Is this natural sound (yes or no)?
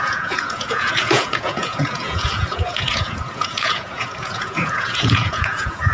no